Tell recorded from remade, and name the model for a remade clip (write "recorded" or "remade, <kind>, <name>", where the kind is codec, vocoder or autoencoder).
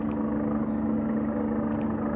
recorded